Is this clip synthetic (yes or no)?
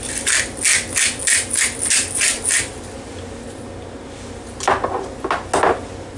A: no